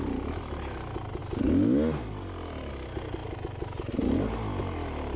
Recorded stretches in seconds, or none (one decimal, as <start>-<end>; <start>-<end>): 0.0-5.2